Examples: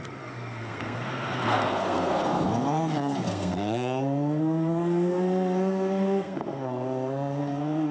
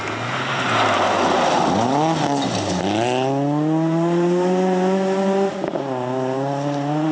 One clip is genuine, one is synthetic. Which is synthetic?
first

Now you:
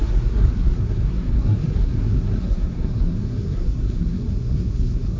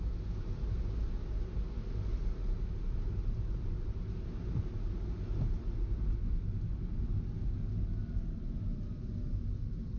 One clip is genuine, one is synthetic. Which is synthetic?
first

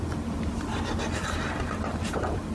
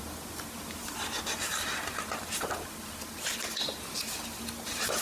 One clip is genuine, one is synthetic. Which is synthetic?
first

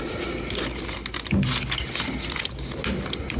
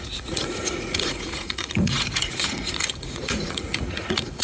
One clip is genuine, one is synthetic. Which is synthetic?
second